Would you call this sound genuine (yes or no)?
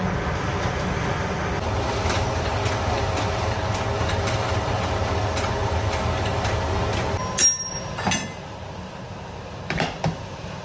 yes